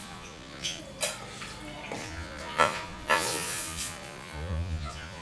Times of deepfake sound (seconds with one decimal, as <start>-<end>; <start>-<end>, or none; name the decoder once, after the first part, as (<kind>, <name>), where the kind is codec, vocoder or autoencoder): 0.0-0.8 (vocoder, Vocos); 2.0-5.2